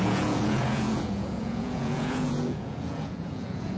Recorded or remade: remade